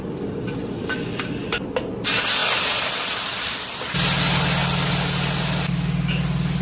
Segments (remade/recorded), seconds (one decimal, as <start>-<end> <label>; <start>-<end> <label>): 0.0-6.6 recorded